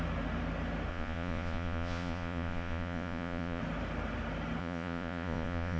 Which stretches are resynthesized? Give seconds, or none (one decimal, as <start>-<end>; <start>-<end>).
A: 0.9-3.6; 4.6-5.8